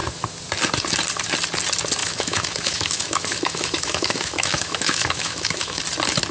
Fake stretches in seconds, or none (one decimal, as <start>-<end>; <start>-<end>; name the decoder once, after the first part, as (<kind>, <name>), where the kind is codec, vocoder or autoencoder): 2.0-5.8 (autoencoder, DAC-VAE)